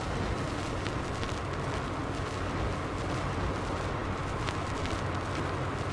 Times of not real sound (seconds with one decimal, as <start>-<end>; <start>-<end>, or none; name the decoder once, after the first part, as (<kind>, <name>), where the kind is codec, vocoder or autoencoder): none